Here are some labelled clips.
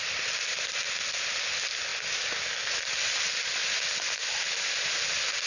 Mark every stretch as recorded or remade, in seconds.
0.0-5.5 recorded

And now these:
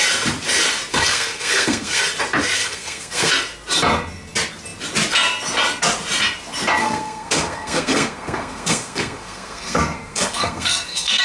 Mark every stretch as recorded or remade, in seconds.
0.0-0.9 recorded; 0.9-2.0 remade; 2.0-2.6 recorded; 2.6-3.3 remade; 3.3-6.8 recorded; 6.8-11.2 remade

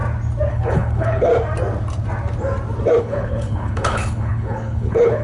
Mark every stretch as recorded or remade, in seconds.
0.0-0.5 recorded; 0.5-1.3 remade; 1.3-3.0 recorded; 3.0-5.2 remade

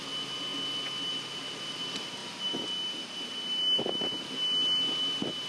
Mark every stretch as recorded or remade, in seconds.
0.0-5.5 recorded

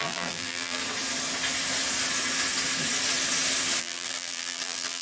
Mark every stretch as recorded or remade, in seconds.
0.0-0.8 remade; 0.8-3.8 recorded; 3.8-5.0 remade

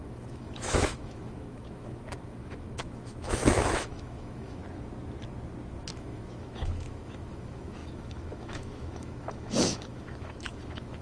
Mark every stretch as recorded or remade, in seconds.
0.0-4.6 remade; 4.6-5.9 recorded; 5.9-11.0 remade

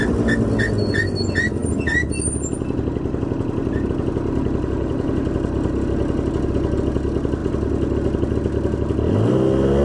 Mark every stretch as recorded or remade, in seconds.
0.0-9.8 recorded

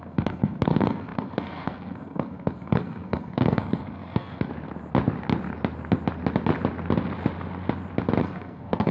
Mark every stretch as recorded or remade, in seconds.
0.0-4.5 remade; 4.5-8.2 recorded; 8.2-8.9 remade